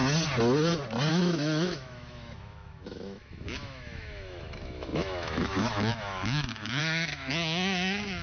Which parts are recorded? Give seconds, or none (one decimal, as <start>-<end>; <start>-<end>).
0.0-1.1